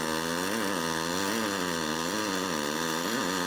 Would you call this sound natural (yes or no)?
yes